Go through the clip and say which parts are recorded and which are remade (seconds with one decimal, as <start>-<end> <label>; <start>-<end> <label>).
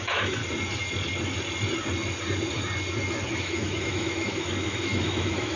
0.0-0.4 remade; 0.4-3.3 recorded; 3.3-5.6 remade